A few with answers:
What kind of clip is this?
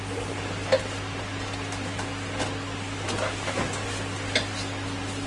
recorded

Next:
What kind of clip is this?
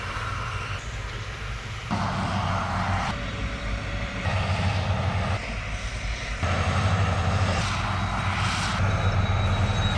recorded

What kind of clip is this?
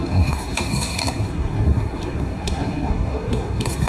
remade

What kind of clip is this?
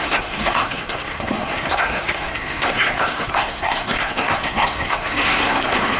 remade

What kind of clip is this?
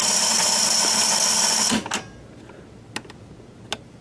recorded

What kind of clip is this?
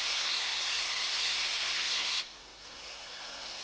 remade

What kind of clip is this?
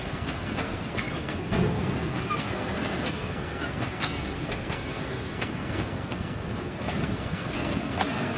remade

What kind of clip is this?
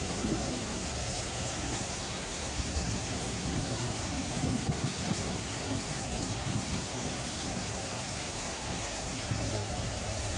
remade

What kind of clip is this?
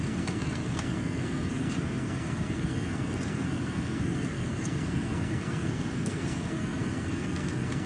remade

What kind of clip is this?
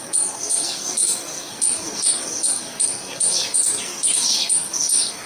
remade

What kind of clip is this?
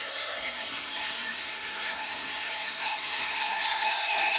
remade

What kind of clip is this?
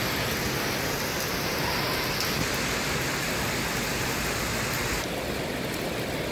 recorded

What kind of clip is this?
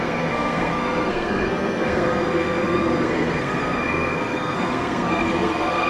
remade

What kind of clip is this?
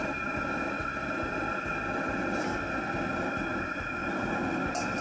recorded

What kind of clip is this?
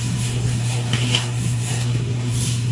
remade